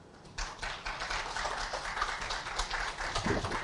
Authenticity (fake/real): real